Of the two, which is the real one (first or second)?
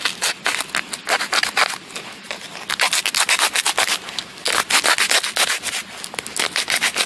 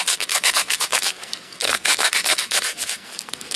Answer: first